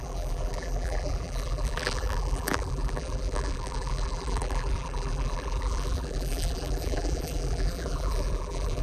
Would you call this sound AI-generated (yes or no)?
yes